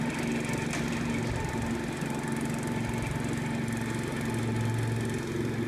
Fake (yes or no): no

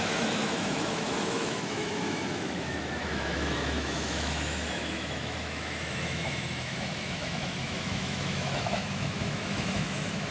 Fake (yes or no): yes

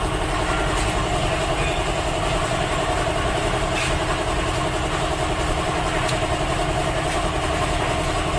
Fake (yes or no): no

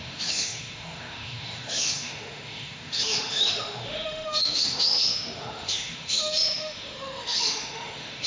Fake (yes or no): yes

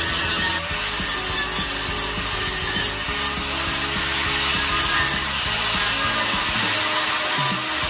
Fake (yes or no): no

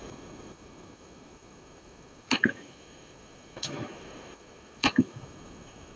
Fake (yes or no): yes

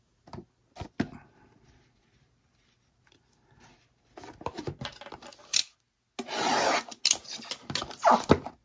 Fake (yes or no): no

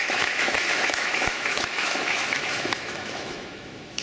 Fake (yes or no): yes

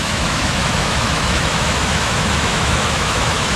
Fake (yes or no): yes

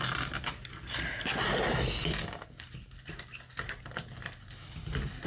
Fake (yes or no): no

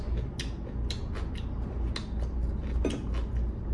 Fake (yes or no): no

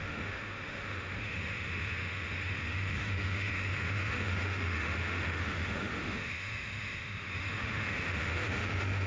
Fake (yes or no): yes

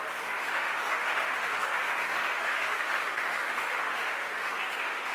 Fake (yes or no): yes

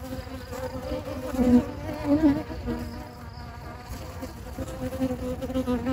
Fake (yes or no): no